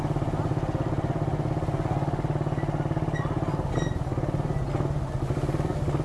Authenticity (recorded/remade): recorded